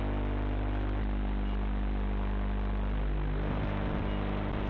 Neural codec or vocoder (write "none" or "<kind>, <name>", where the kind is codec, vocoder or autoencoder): none